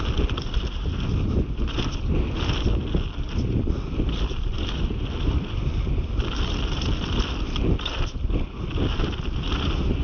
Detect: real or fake real